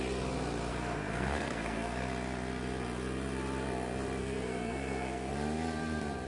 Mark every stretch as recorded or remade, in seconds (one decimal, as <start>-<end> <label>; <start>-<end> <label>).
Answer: 0.0-0.7 recorded; 0.7-2.1 remade; 2.1-4.2 recorded; 4.2-5.3 remade; 5.3-6.3 recorded